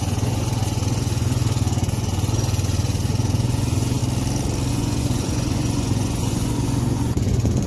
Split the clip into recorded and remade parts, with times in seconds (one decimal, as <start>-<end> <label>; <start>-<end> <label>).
0.0-4.0 remade; 4.0-4.7 recorded; 4.7-7.7 remade